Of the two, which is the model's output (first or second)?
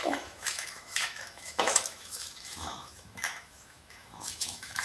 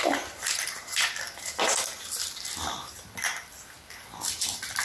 first